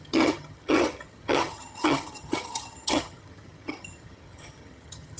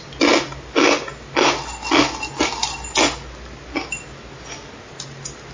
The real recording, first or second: second